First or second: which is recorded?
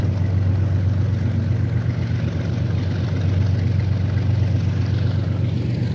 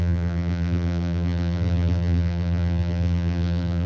first